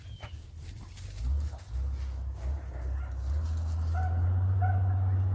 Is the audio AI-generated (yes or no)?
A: no